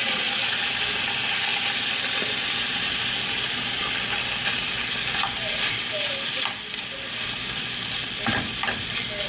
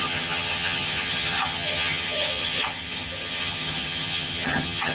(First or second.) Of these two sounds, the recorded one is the first